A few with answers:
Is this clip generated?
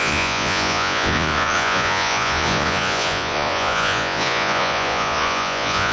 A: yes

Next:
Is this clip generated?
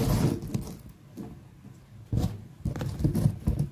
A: no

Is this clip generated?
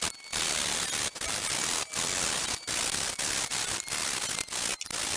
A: no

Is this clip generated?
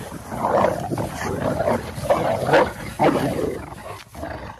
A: no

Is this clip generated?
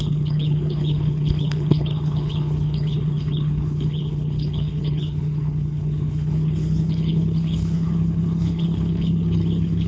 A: yes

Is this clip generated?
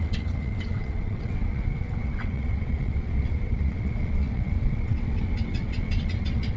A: yes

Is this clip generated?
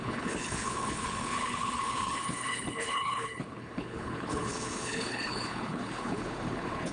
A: yes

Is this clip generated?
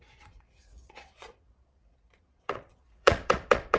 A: yes